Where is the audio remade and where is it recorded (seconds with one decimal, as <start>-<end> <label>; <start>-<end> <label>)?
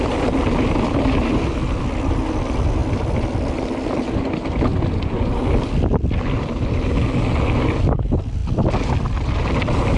0.0-10.0 recorded